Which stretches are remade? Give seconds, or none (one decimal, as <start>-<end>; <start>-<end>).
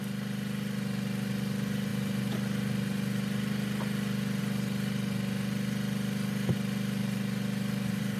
7.0-8.2